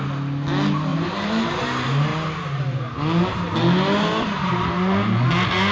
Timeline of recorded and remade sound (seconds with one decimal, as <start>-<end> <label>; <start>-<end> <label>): 0.0-0.9 recorded; 0.9-1.6 remade; 1.6-5.7 recorded